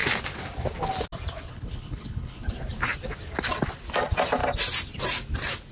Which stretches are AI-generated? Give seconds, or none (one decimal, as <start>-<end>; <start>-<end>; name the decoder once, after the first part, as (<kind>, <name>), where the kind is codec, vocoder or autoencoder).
1.5-2.5 (codec, HILCodec)